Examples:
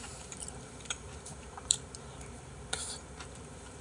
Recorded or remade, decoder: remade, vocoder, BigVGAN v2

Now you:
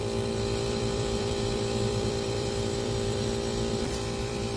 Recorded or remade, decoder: remade, vocoder, BigVGAN v2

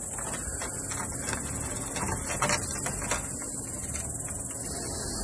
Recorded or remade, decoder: recorded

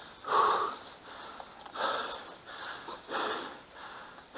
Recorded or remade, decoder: remade, vocoder, BigVGAN v2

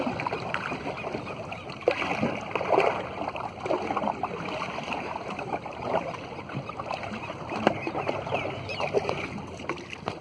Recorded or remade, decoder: remade, vocoder, BigVGAN v2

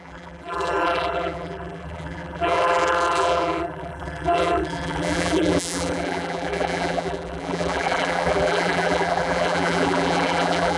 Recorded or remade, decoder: remade, vocoder, BigVGAN v2